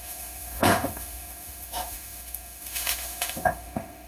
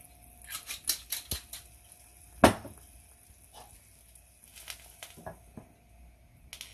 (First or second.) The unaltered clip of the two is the second